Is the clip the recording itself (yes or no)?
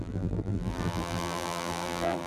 no